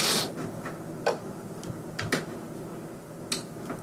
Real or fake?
real